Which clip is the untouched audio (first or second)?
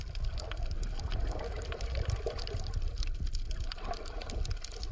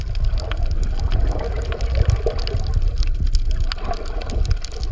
second